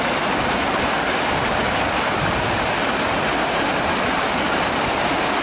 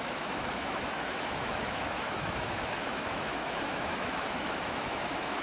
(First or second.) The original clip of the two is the first